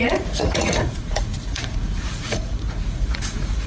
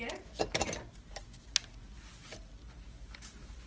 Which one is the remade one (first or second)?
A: first